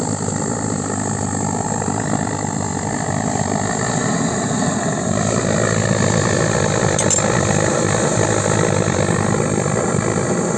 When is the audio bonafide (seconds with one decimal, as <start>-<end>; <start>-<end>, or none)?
0.0-10.6